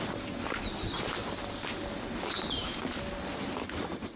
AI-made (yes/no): no